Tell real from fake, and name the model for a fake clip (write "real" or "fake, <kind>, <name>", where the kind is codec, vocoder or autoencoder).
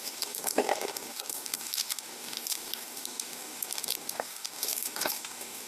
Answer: fake, codec, DAC